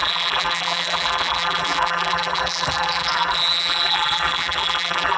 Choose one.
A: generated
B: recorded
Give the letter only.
A